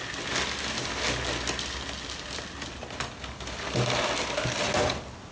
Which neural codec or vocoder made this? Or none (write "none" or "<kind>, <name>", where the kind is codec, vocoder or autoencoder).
none